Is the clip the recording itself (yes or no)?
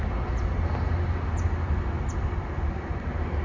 yes